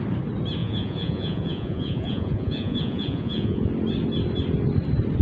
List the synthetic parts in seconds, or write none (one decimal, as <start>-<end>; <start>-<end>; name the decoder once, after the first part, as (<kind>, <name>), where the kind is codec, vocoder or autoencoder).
0.6-3.7 (vocoder, Vocos)

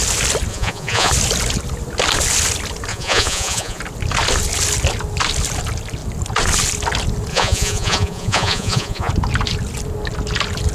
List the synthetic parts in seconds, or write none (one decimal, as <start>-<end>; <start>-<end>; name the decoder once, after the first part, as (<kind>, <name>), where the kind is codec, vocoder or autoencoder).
0.5-1.1 (vocoder, Vocos); 2.9-3.8; 7.3-9.1

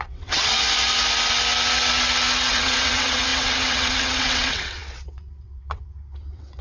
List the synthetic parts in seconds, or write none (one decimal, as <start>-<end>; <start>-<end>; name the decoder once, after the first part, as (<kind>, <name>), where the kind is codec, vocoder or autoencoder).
0.0-0.5 (vocoder, WaveNeXt); 2.5-6.6